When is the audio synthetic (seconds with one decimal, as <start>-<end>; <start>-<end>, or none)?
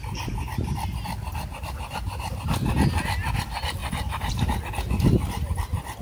1.6-2.3; 3.8-4.6